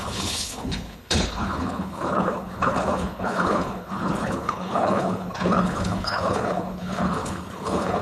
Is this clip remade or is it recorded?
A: remade